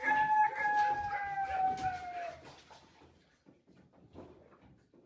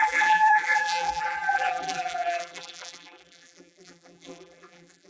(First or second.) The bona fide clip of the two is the first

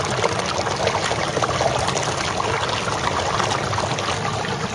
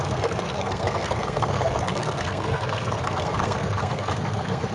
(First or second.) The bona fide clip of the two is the first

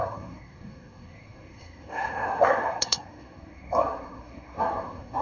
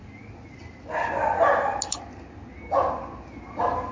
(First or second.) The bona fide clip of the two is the second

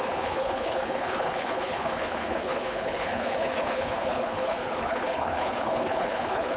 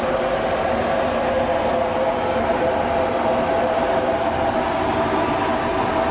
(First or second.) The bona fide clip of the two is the second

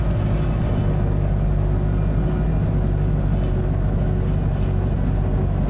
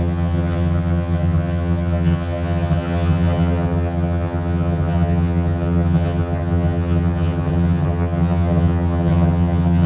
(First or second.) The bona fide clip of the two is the first